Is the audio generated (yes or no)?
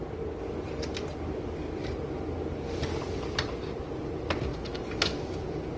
no